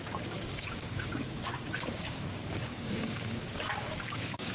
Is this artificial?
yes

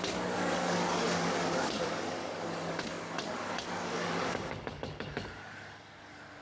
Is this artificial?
yes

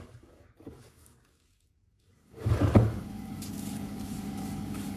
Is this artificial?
yes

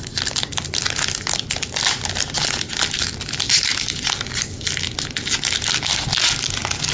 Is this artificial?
no